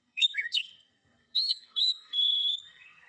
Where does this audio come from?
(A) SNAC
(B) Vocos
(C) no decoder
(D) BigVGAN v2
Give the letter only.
A